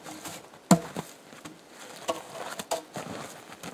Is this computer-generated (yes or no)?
no